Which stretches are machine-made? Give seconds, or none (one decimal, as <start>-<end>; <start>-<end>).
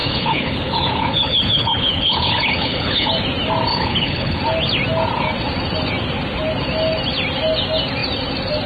0.0-3.1; 3.7-4.4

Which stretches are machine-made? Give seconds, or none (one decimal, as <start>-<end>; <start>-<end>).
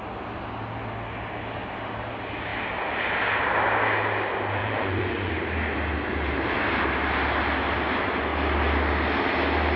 4.6-5.3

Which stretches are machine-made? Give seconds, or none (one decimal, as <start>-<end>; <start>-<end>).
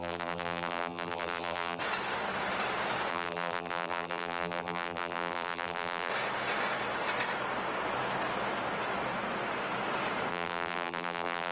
0.0-1.8; 3.1-6.1; 10.3-11.5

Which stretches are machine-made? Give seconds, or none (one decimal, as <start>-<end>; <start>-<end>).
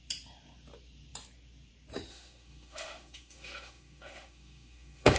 2.1-5.2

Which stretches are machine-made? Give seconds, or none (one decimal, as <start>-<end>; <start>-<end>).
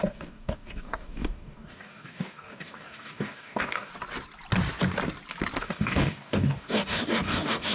0.0-3.9; 5.6-7.7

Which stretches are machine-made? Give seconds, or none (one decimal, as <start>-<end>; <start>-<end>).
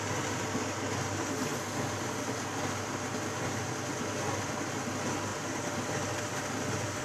none